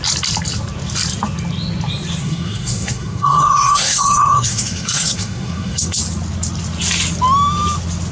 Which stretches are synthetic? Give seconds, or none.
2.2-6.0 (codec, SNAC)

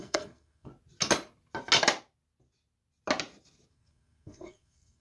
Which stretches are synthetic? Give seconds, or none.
0.0-0.7 (codec, SNAC); 3.7-5.0

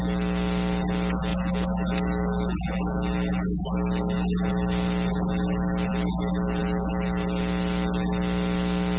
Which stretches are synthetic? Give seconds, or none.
none

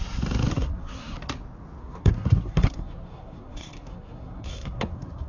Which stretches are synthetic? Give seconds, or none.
0.5-1.2 (codec, SNAC); 1.8-5.3

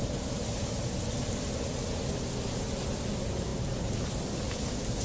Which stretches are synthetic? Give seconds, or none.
none

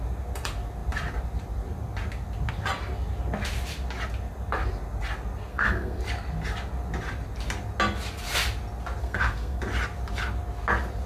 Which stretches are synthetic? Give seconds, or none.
5.5-6.0 (codec, SNAC); 9.0-9.6